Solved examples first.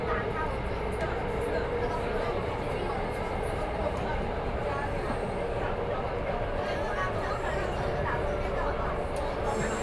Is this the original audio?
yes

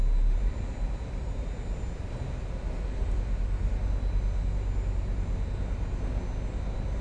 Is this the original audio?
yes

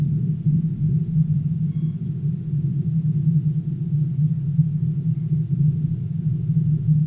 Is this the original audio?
yes